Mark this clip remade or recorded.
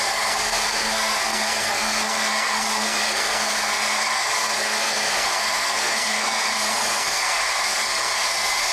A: remade